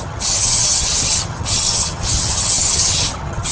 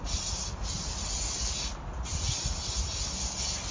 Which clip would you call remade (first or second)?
first